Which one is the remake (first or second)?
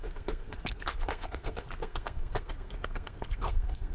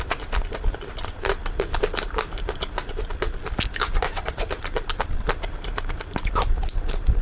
first